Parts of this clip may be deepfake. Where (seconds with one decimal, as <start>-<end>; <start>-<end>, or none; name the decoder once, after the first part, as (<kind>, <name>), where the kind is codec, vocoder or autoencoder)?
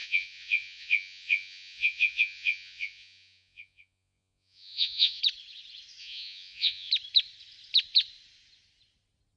0.0-5.2 (vocoder, Vocos); 6.0-6.9